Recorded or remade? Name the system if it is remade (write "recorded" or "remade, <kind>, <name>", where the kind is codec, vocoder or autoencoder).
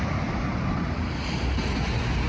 recorded